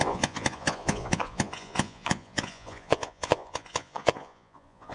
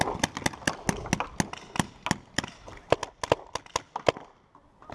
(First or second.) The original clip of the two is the second